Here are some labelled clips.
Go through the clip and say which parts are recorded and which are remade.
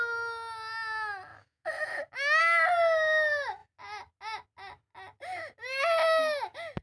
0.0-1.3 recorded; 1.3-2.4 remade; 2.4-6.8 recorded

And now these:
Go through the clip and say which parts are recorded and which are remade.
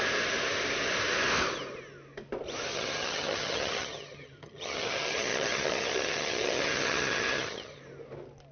0.0-2.7 recorded; 2.7-7.8 remade; 7.8-8.5 recorded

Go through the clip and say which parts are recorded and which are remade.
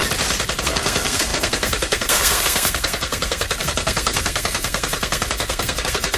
0.0-0.6 recorded; 0.6-6.2 remade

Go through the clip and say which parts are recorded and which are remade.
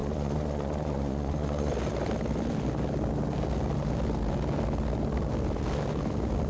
0.0-1.7 remade; 1.7-6.5 recorded